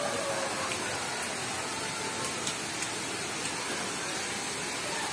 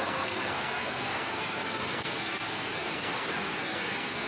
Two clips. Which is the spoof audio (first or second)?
second